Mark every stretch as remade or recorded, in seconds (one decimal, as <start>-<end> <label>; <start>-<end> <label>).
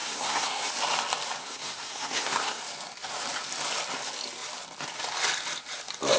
0.0-0.7 remade; 0.7-1.4 recorded; 1.4-2.6 remade; 2.6-6.2 recorded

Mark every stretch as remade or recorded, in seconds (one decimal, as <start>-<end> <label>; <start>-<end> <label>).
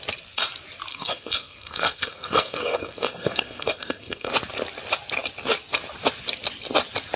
0.0-0.9 recorded; 0.9-4.3 remade; 4.3-7.2 recorded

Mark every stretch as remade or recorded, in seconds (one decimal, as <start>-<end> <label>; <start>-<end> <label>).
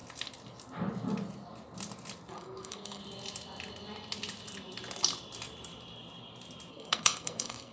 0.0-2.3 recorded; 2.3-3.0 remade; 3.0-6.7 recorded; 6.7-7.7 remade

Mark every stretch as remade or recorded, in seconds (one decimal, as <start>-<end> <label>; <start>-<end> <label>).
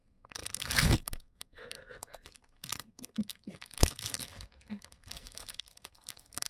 0.0-6.5 remade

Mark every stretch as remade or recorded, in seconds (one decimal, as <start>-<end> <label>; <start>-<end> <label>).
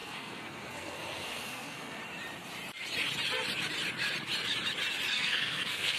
0.0-2.0 remade; 2.0-5.1 recorded; 5.1-6.0 remade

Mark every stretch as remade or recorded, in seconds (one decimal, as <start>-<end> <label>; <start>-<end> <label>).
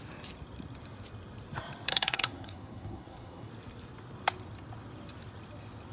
0.0-1.9 recorded; 1.9-3.5 remade; 3.5-5.9 recorded